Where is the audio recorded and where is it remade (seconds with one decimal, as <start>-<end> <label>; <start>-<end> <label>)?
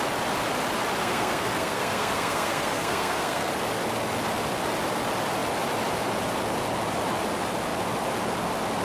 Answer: 0.0-1.0 recorded; 1.0-3.5 remade; 3.5-8.8 recorded